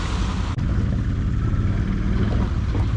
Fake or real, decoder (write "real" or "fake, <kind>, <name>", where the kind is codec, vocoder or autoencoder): real